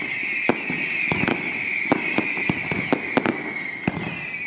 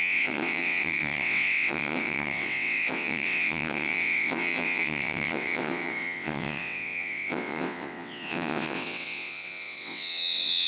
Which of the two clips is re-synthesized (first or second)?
second